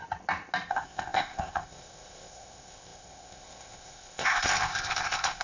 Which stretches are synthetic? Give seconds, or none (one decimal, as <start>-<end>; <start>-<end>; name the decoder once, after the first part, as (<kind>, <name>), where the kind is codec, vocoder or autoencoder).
0.7-5.4 (codec, ZipCodec)